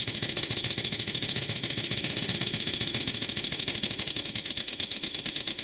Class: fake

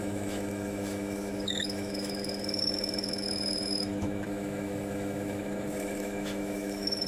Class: fake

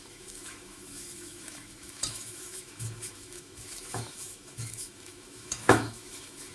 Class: fake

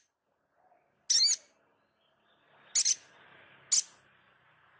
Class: real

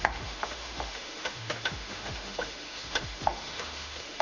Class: fake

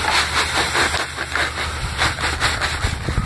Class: real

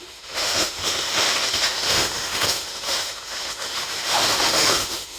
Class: fake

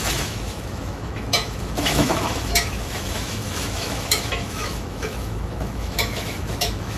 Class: fake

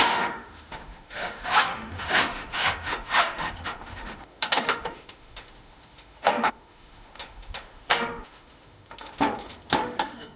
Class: fake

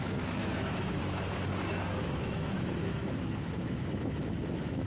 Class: fake